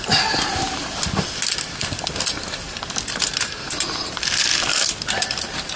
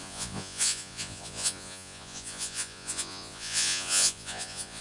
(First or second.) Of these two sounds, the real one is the first